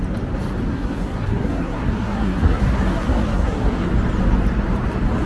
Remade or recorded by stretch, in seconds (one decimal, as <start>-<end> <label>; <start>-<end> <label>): 0.0-0.7 recorded; 0.7-3.9 remade; 3.9-5.3 recorded